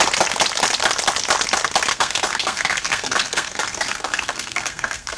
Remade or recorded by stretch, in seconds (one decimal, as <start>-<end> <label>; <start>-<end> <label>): 0.0-1.9 recorded; 1.9-5.2 remade

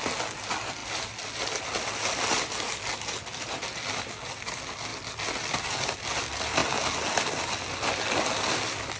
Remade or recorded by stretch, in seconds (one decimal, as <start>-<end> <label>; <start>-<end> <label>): 0.0-9.0 recorded

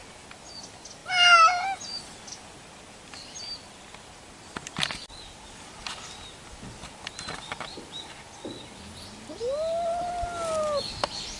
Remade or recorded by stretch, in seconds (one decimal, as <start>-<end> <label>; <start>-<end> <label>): 0.0-11.4 recorded

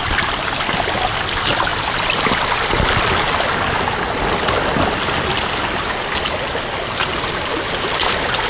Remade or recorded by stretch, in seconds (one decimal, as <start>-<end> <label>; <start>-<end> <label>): 0.0-8.5 recorded